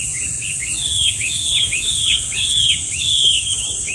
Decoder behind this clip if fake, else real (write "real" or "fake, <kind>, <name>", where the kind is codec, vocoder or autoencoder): fake, codec, HILCodec